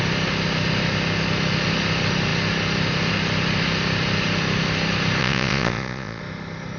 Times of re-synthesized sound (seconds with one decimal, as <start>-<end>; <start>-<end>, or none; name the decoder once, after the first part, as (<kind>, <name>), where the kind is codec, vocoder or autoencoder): 5.2-6.2 (vocoder, Vocos)